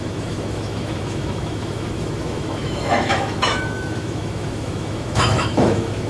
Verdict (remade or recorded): remade